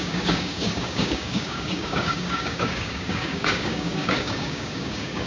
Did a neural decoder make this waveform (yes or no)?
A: yes